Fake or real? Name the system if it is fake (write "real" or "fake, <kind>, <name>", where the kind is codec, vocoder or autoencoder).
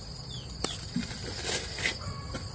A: real